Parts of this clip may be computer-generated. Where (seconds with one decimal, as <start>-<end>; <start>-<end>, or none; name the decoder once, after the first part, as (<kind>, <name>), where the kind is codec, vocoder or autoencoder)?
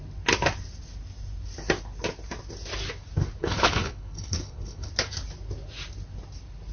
3.4-4.9 (codec, HILCodec)